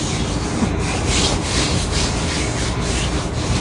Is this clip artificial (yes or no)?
no